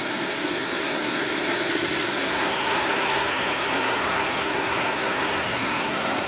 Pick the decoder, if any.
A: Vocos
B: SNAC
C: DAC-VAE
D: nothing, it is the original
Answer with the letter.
B